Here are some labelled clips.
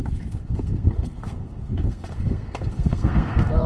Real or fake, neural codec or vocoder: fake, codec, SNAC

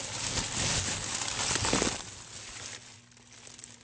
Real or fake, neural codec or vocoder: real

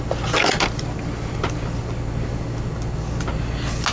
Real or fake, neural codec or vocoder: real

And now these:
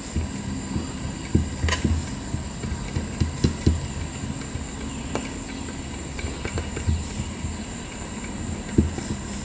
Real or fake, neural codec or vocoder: real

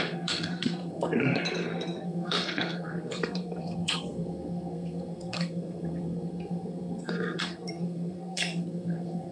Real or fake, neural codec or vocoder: fake, codec, SNAC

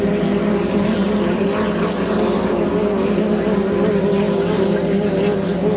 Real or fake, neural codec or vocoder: real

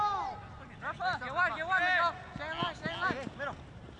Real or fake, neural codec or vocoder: real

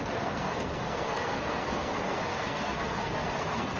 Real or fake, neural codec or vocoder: fake, codec, SNAC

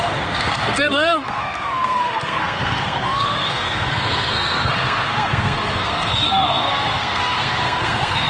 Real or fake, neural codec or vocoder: fake, codec, SNAC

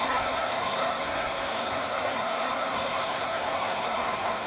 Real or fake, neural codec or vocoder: fake, codec, SNAC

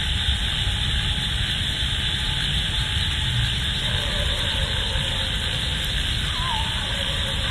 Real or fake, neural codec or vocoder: real